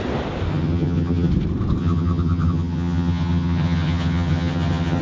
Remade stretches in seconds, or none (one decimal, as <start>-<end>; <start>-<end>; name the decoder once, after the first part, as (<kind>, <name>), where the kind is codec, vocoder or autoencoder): 0.5-1.3 (vocoder, HiFi-GAN); 1.8-5.0